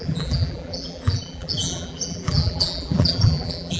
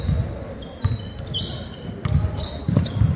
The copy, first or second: first